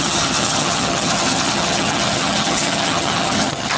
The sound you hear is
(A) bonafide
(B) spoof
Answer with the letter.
B